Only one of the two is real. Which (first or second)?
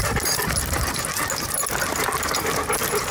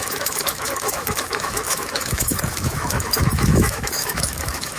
first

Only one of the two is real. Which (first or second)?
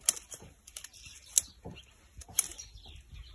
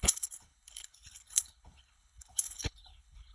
first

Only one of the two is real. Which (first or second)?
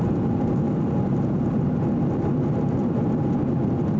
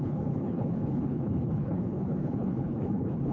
first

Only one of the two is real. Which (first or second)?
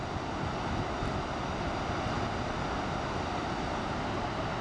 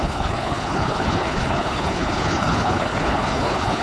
first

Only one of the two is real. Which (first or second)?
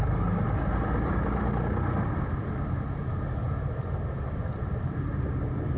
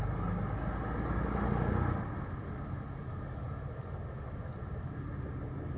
second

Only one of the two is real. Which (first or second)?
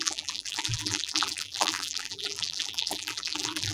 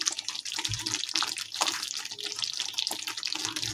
second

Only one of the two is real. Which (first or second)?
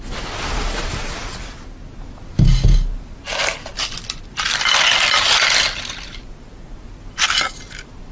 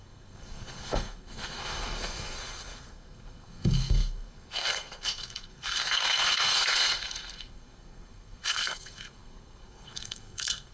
first